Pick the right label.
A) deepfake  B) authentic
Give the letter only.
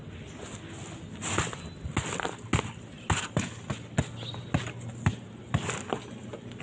B